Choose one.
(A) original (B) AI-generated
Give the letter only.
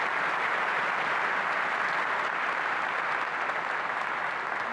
A